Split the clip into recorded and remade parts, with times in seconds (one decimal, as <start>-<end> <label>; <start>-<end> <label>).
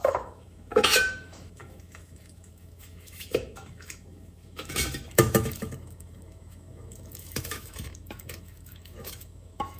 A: 0.0-9.8 remade